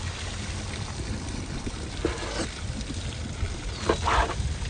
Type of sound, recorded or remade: recorded